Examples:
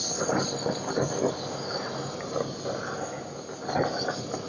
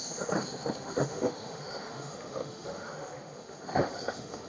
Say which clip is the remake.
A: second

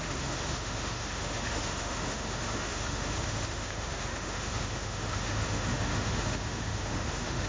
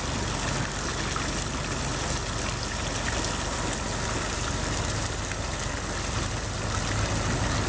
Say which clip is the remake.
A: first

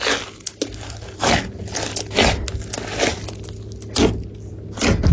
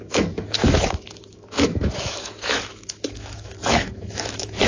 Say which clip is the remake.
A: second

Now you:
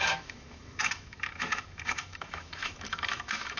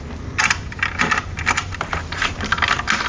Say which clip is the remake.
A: first